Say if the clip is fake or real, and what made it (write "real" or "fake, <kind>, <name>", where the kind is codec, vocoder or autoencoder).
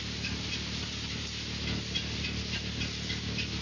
fake, vocoder, BigVGAN v2